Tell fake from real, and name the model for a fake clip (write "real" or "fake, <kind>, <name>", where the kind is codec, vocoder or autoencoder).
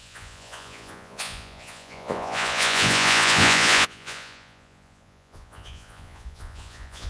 fake, vocoder, Vocos